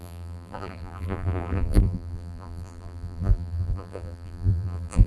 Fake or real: fake